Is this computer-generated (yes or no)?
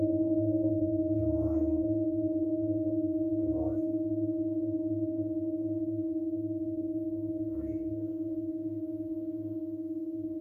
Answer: yes